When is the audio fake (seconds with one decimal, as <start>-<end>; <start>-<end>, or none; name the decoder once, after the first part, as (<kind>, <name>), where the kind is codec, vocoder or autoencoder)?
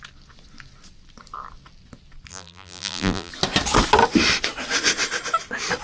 2.3-3.3 (vocoder, BigVGAN v2)